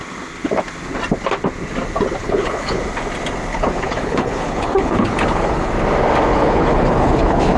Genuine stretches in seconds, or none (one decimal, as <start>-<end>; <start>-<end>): 0.0-2.2; 2.8-3.5; 5.7-6.3

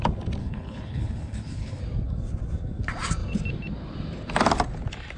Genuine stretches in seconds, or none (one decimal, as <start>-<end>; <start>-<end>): 0.0-0.4; 1.8-5.2

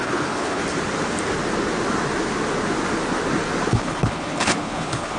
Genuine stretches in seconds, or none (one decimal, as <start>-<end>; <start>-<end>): 0.6-3.7

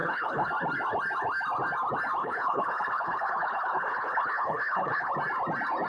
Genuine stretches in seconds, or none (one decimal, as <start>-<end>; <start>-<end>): 0.5-2.2; 5.1-5.9

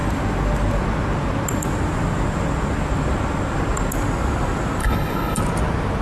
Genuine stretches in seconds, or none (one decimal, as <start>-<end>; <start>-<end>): 0.0-4.8; 5.4-6.0

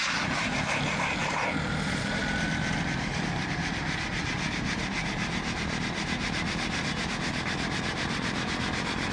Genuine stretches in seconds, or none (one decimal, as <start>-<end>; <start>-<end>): 0.0-9.1